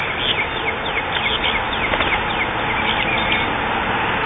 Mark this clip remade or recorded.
recorded